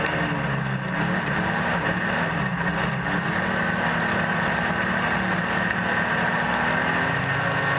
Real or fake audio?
real